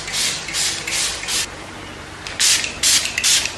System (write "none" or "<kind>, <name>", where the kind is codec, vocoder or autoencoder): none